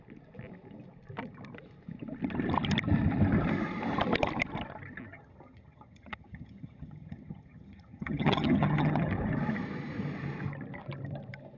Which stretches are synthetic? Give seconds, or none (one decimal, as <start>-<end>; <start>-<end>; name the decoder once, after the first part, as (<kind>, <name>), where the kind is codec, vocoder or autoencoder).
5.1-9.1 (vocoder, HiFi-GAN)

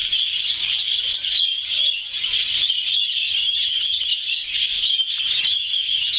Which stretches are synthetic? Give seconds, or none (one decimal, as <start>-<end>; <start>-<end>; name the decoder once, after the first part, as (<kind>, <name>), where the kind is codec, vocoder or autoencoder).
3.3-4.1 (vocoder, HiFi-GAN); 5.2-6.2

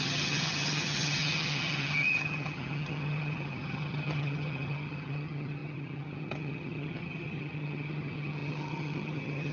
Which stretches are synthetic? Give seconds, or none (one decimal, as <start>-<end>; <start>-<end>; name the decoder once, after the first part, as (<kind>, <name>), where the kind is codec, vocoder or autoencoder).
0.0-9.5 (vocoder, HiFi-GAN)

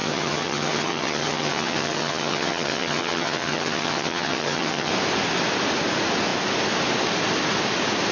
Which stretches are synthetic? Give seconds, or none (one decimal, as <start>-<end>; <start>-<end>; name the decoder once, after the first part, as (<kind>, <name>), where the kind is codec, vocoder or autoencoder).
0.0-4.9 (vocoder, HiFi-GAN)

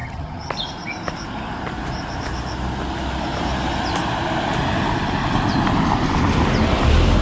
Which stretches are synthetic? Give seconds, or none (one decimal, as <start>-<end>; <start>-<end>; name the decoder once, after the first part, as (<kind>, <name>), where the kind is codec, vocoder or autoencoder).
0.0-0.5 (vocoder, HiFi-GAN)

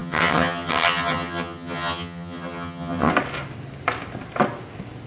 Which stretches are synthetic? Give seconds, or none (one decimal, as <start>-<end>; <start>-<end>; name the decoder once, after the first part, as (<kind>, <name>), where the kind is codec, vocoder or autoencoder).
0.0-3.1 (vocoder, HiFi-GAN)

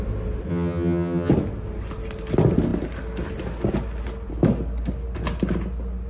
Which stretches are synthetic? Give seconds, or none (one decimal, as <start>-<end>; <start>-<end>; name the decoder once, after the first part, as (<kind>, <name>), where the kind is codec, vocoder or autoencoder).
0.5-1.3 (vocoder, HiFi-GAN)

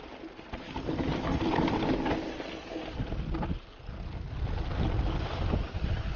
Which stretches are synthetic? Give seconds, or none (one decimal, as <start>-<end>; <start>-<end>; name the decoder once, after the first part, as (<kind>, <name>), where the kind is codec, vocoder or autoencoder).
none